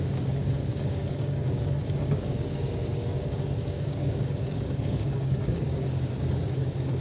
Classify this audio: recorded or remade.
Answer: remade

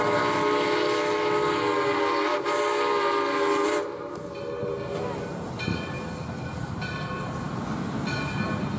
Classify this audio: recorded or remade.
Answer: recorded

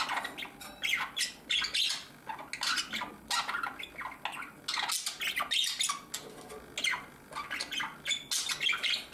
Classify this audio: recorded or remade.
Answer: recorded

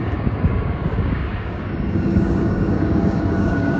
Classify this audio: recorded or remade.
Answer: remade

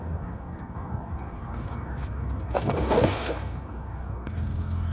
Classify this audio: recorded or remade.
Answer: remade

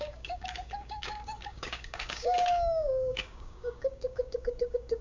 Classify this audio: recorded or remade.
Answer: remade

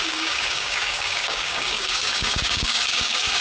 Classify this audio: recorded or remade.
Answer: remade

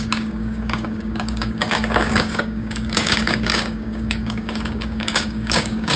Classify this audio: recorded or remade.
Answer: remade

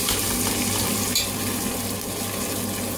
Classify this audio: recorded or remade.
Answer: recorded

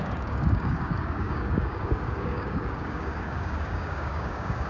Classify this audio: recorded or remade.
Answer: remade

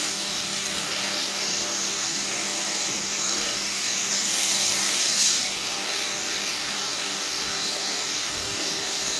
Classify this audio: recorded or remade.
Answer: remade